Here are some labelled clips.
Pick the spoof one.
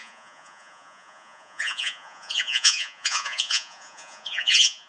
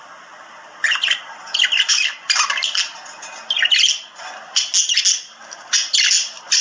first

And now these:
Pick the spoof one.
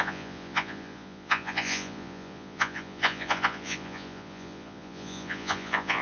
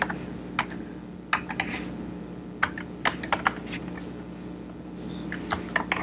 first